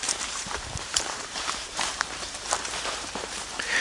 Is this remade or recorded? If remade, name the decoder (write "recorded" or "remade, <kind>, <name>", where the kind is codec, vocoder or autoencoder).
remade, vocoder, BigVGAN v2